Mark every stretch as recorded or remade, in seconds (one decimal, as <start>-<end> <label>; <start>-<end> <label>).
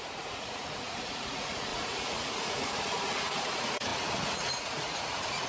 0.0-5.5 remade